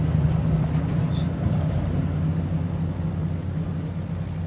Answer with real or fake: real